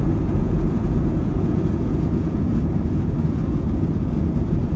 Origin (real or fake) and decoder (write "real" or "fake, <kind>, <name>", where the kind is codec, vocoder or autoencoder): fake, vocoder, Vocos